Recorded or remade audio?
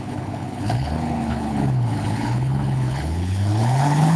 remade